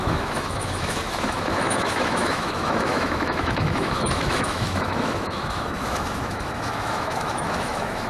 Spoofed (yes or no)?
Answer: yes